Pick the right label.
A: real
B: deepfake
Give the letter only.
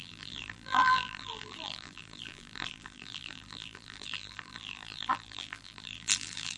B